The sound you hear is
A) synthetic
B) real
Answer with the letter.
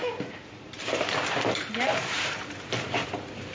A